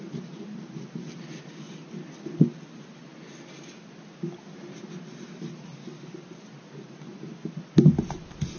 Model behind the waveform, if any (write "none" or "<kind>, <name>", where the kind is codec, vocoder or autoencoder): none